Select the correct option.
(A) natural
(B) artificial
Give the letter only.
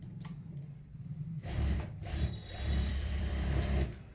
B